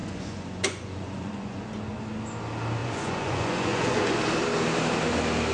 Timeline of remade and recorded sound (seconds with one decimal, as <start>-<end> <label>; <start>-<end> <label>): 0.0-1.8 remade; 1.8-2.8 recorded; 2.8-4.2 remade; 4.2-5.5 recorded